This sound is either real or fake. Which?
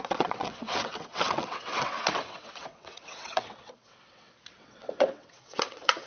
fake